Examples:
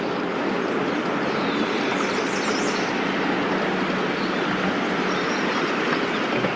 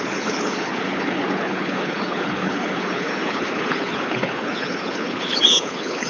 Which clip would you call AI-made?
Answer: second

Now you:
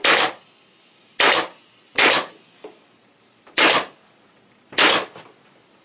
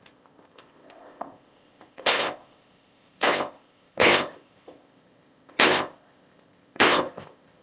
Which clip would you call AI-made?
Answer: second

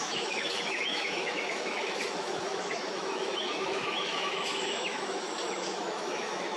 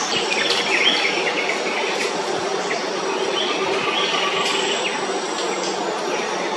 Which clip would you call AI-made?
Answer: first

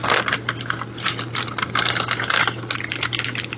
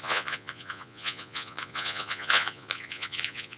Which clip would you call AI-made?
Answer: second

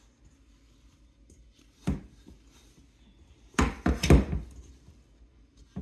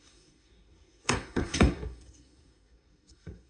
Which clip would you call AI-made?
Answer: second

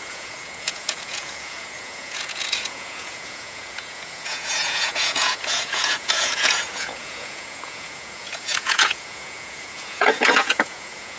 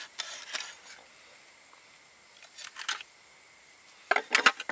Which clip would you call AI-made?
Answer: first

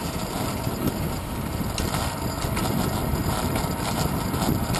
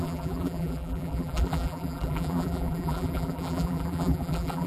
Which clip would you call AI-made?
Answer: second